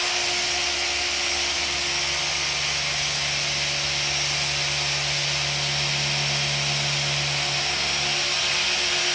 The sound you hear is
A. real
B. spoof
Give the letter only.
A